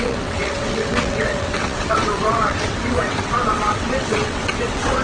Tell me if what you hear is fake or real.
fake